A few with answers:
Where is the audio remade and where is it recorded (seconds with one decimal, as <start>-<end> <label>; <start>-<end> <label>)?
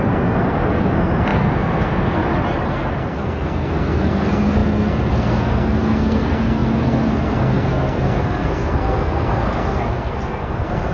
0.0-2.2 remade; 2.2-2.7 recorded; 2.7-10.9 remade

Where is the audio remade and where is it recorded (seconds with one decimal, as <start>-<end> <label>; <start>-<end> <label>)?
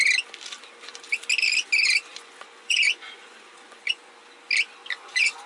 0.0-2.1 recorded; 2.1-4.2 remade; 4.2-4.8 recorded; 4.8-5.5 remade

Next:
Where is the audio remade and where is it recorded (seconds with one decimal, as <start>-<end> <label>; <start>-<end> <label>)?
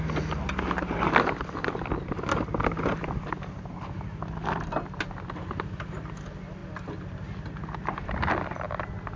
0.0-9.2 recorded